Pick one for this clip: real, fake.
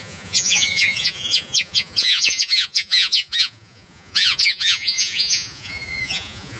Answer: fake